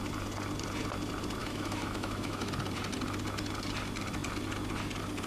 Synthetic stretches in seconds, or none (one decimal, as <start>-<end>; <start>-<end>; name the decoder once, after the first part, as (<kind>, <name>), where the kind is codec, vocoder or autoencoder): 1.4-2.5 (autoencoder, DAC-VAE)